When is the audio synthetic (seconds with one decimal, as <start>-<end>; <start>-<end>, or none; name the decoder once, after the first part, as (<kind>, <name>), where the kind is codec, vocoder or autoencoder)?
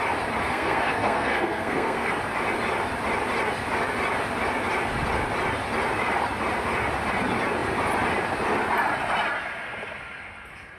0.4-2.1 (codec, SNAC)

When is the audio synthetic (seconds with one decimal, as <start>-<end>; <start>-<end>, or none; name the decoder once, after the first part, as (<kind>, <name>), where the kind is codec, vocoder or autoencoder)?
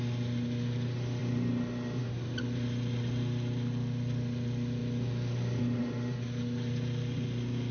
none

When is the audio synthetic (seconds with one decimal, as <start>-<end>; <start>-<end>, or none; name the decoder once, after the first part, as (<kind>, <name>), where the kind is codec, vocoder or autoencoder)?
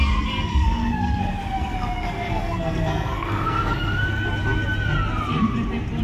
0.5-4.1 (codec, SNAC)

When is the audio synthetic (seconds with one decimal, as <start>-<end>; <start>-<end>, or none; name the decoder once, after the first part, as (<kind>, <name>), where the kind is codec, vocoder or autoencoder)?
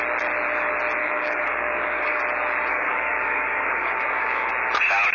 1.0-2.2 (codec, DAC); 2.7-4.5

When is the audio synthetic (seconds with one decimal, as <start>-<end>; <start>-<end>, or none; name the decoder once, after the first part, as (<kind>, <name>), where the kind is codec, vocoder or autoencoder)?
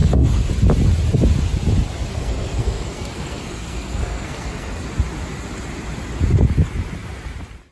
0.0-0.5 (codec, SNAC); 2.1-4.8